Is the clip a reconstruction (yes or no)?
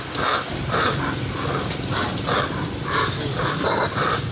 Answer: no